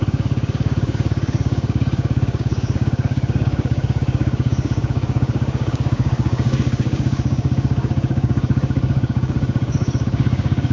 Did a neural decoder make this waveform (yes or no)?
yes